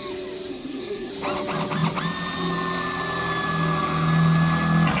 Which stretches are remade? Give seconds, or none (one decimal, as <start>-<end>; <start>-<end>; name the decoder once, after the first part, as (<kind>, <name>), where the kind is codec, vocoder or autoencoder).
0.5-1.1 (codec, SNAC)